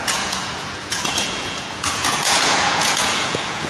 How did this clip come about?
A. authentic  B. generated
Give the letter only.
B